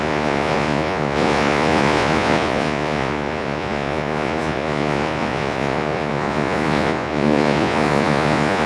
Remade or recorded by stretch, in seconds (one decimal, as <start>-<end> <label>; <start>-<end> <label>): 0.0-8.7 remade

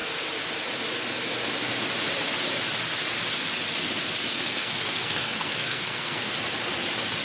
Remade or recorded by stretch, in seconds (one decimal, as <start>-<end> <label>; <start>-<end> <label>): 0.0-4.3 recorded; 4.3-6.3 remade; 6.3-7.2 recorded

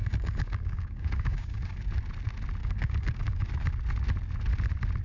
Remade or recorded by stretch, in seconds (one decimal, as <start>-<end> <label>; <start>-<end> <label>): 0.0-1.8 remade; 1.8-2.6 recorded; 2.6-3.5 remade; 3.5-5.0 recorded

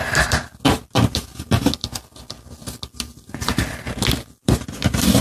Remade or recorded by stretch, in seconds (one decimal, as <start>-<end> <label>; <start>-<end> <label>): 0.0-5.2 recorded